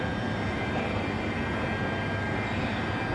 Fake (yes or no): yes